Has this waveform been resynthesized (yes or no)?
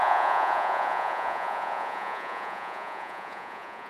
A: yes